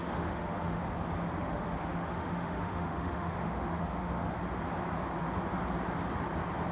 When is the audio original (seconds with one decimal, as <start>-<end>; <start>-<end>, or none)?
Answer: 0.8-1.4; 4.3-6.7